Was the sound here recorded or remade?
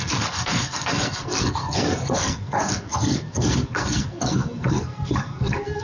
remade